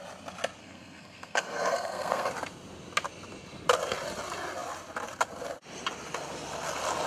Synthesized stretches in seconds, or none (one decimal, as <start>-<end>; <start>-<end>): 0.6-2.3